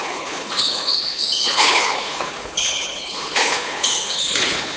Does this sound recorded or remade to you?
remade